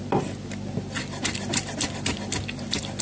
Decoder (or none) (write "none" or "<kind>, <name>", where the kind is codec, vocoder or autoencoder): none